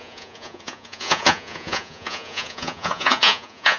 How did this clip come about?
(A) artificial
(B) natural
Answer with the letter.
A